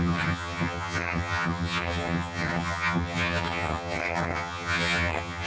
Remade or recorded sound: remade